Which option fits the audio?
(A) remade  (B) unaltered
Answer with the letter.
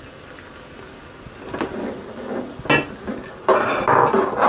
B